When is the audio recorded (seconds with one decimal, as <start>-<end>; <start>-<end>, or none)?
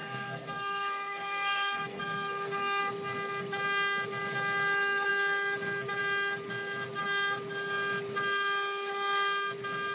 2.8-9.9